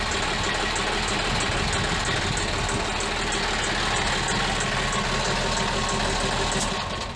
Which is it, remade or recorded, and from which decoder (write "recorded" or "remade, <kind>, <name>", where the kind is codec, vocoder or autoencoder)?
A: recorded